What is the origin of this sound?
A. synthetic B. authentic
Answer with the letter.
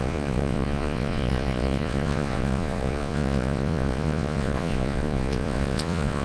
A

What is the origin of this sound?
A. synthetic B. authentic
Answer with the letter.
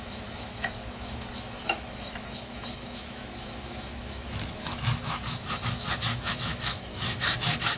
A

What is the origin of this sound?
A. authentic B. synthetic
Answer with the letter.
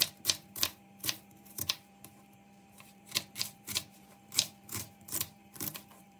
B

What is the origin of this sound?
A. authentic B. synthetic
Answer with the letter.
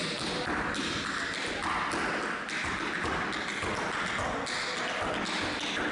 A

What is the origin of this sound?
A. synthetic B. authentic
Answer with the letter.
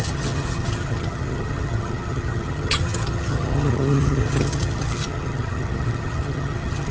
A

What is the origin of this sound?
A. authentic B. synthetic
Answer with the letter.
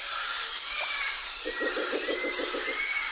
A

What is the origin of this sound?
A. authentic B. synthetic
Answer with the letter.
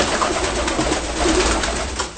A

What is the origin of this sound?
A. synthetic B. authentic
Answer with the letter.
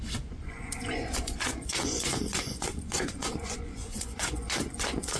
A